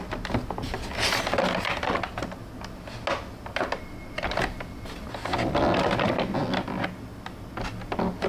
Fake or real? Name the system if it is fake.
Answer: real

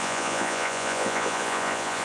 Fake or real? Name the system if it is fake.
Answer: fake, vocoder, Vocos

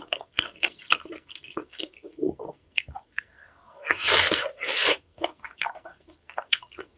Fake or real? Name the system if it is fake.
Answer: fake, codec, SNAC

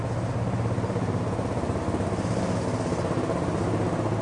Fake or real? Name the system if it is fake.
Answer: real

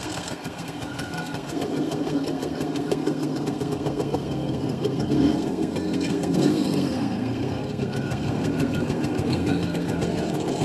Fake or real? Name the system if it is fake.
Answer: fake, codec, SNAC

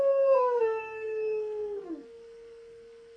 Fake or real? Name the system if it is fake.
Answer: fake, codec, SNAC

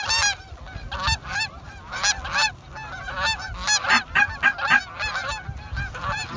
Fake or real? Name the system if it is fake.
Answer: real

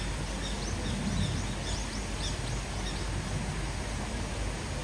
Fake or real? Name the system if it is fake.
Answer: real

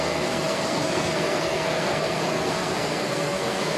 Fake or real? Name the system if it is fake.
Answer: fake, codec, SNAC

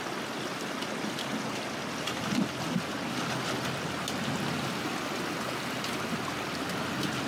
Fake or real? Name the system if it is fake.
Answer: real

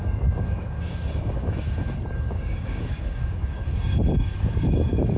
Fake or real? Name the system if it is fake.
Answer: fake, codec, DAC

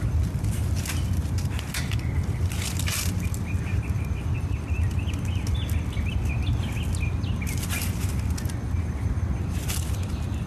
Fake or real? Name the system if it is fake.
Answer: real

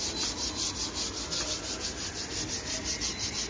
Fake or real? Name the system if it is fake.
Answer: real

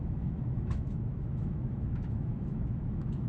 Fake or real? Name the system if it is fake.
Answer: fake, autoencoder, DAC-VAE